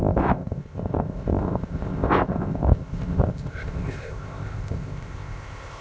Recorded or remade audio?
remade